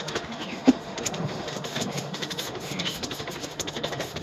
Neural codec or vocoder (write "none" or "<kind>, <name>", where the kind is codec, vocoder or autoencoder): autoencoder, DAC-VAE